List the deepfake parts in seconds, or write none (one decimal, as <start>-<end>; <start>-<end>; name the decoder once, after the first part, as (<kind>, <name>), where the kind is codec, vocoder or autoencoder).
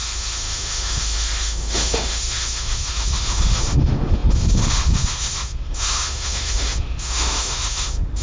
0.0-8.2 (autoencoder, DAC-VAE)